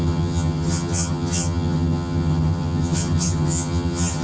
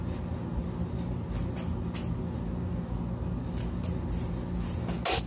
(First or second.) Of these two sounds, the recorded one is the second